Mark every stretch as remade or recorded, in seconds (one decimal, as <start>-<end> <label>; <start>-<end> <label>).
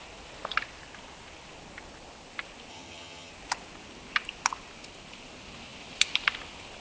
0.0-2.7 recorded; 2.7-3.3 remade; 3.3-6.8 recorded